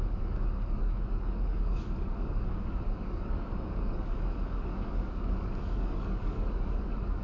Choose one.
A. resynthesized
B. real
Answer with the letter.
A